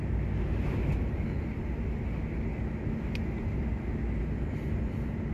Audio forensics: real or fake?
real